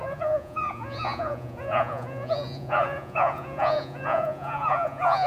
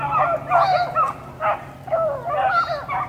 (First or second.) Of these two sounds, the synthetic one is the first